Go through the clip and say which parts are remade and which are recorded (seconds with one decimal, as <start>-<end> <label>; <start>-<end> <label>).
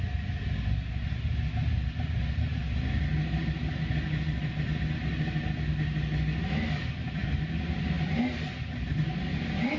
0.0-9.8 recorded